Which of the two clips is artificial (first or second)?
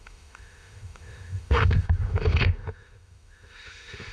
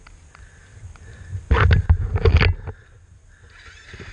first